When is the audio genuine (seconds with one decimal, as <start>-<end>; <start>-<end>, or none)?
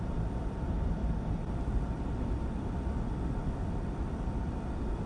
none